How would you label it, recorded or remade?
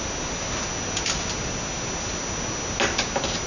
recorded